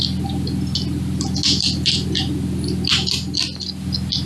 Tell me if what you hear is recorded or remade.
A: recorded